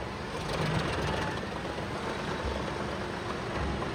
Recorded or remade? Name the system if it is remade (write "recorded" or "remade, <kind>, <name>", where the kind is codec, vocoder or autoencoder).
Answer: recorded